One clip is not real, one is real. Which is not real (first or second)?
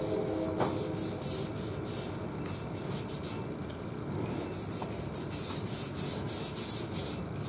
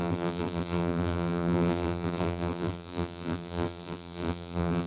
second